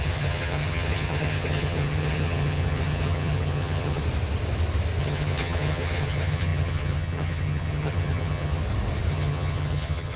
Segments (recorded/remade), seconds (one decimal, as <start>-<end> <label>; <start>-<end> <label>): 0.0-4.0 remade; 4.0-5.0 recorded; 5.0-8.6 remade; 8.6-9.1 recorded; 9.1-10.2 remade